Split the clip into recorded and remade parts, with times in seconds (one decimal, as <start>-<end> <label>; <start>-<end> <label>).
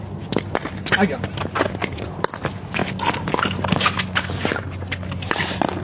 0.0-5.8 recorded